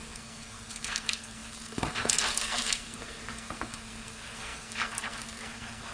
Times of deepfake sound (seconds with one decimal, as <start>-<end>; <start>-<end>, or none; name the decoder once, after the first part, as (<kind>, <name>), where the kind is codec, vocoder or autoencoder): 0.0-5.9 (codec, SNAC)